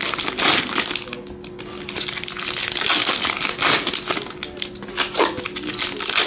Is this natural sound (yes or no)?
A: yes